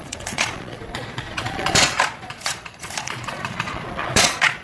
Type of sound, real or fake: fake